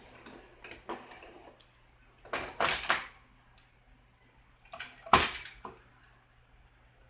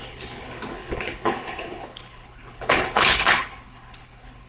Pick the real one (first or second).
first